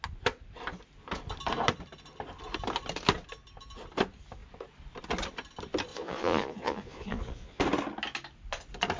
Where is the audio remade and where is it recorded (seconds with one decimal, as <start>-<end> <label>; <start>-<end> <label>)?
0.0-5.9 recorded; 5.9-7.6 remade; 7.6-9.0 recorded